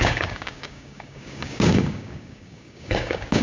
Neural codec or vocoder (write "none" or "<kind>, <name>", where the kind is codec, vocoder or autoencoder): codec, DAC